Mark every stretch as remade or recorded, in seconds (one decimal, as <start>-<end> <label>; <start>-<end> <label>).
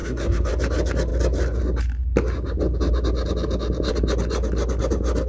0.0-0.5 remade; 0.5-5.3 recorded